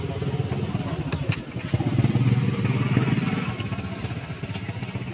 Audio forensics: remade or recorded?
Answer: recorded